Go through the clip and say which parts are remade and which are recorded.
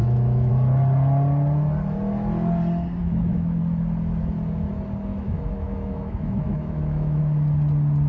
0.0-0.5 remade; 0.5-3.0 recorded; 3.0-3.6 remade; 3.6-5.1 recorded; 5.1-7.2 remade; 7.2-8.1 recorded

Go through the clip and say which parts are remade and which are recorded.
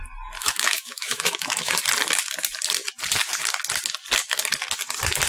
0.0-0.4 recorded; 0.4-1.7 remade; 1.7-5.3 recorded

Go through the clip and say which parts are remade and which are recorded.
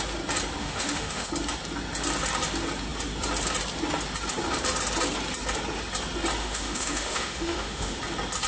0.0-0.6 recorded; 0.6-1.3 remade; 1.3-6.4 recorded; 6.4-8.0 remade; 8.0-8.5 recorded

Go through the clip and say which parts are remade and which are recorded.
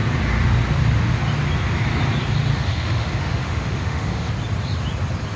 0.0-2.5 recorded; 2.5-4.3 remade; 4.3-5.4 recorded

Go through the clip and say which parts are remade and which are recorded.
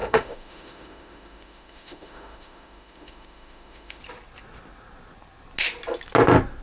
0.0-4.0 remade; 4.0-6.6 recorded